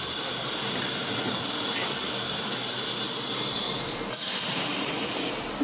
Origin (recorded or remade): recorded